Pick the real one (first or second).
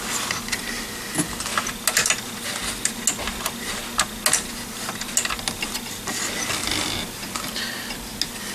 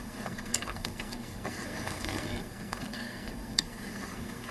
first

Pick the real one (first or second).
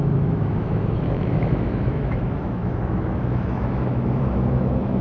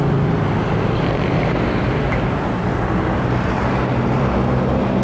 second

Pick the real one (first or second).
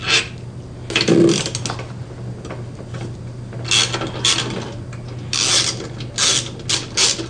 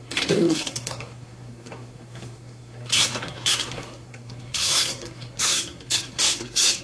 first